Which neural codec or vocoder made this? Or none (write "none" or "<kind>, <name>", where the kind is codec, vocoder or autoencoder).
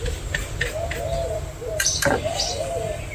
none